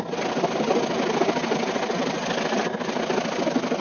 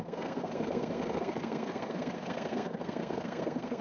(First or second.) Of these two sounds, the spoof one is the second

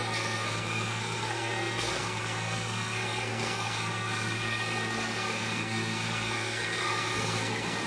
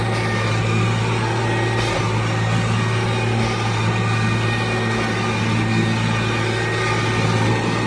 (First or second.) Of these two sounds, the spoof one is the first